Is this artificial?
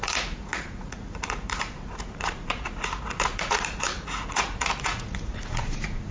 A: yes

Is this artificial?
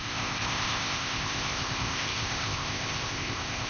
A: yes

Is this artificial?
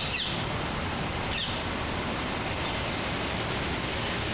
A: no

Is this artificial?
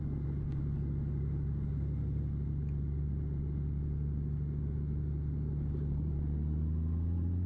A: no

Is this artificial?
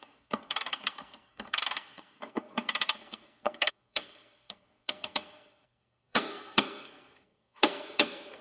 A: yes